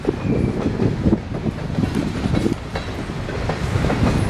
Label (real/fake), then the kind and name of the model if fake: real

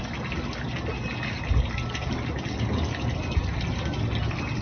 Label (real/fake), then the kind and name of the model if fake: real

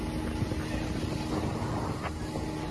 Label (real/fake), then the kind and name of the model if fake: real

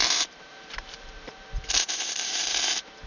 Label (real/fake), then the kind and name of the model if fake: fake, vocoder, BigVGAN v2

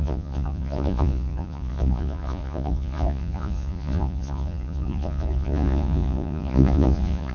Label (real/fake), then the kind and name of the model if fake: fake, vocoder, Vocos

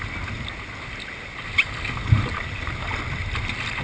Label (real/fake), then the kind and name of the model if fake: real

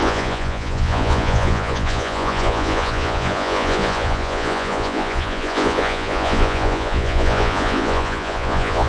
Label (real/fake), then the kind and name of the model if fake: fake, vocoder, Vocos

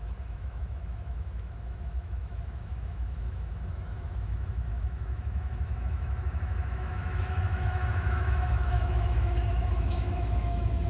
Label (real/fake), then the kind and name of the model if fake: fake, autoencoder, DAC-VAE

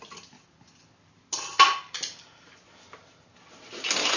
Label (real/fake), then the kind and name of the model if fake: real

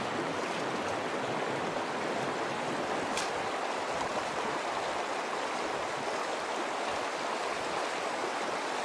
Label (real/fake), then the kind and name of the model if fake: real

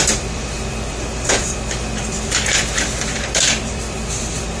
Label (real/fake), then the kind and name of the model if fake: fake, vocoder, BigVGAN v2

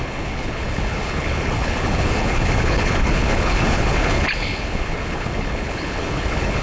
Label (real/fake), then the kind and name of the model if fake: fake, codec, HILCodec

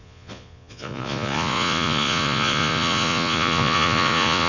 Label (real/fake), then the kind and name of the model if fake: fake, vocoder, Vocos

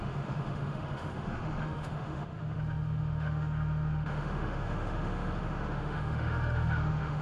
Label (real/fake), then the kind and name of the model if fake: fake, autoencoder, DAC-VAE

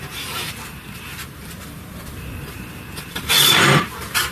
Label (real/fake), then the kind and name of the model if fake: fake, vocoder, BigVGAN v2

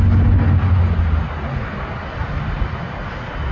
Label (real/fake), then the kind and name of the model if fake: real